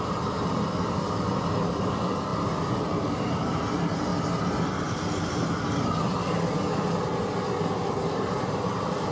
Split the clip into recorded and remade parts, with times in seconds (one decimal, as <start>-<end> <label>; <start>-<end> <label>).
0.0-4.1 remade; 4.1-7.9 recorded; 7.9-9.1 remade